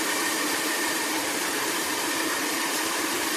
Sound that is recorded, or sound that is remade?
remade